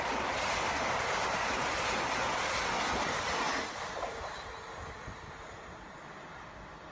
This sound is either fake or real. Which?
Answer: real